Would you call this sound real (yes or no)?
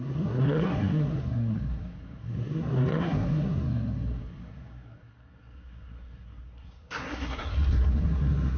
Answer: no